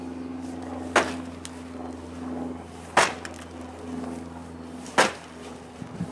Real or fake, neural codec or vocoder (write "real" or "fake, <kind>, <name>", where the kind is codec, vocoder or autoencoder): real